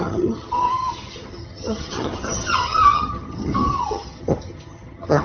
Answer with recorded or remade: remade